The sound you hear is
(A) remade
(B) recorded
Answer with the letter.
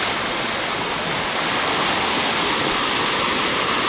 B